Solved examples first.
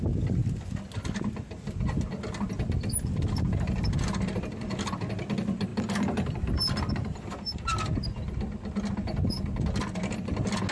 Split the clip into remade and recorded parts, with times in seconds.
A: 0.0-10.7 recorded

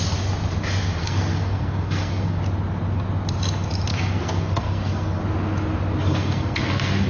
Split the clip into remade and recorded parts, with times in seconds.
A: 0.0-1.0 recorded; 1.0-2.4 remade; 2.4-3.9 recorded; 3.9-5.2 remade; 5.2-6.1 recorded; 6.1-7.1 remade